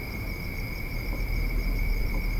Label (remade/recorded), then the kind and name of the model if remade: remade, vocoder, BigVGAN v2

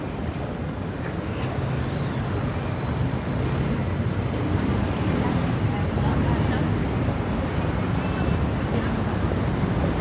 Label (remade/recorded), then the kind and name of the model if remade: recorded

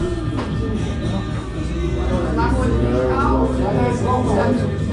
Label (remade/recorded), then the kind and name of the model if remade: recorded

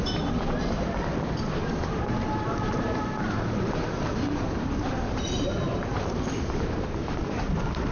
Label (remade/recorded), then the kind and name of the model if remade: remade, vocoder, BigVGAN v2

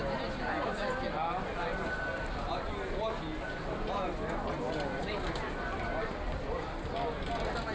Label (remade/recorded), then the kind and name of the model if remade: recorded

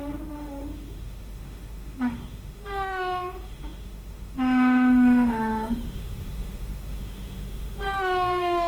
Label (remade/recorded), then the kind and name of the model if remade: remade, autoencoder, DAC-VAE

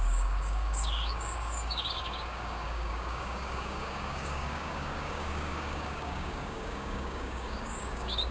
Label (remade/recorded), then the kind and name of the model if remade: remade, codec, DAC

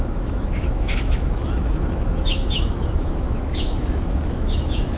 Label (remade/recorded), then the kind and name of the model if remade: remade, autoencoder, DAC-VAE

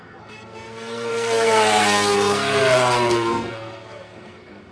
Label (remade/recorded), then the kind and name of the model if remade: remade, codec, SNAC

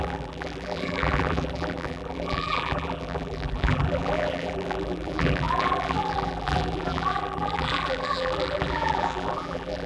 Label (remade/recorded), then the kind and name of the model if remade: remade, vocoder, BigVGAN v2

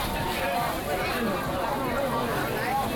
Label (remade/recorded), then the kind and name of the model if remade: recorded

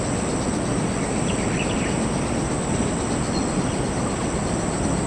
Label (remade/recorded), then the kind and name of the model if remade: recorded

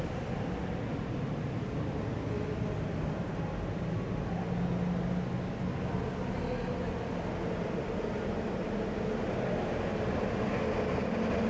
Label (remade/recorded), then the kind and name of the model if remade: recorded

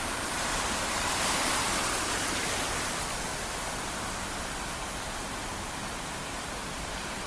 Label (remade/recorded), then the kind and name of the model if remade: remade, vocoder, BigVGAN v2